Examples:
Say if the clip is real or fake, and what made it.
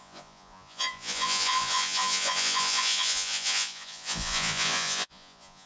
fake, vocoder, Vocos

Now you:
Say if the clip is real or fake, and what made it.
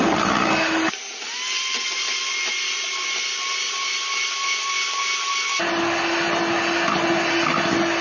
real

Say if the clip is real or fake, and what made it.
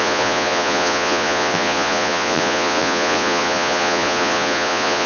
fake, vocoder, Vocos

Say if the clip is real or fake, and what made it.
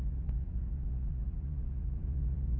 fake, vocoder, Vocos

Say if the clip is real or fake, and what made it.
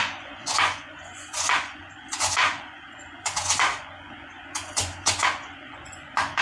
fake, vocoder, Vocos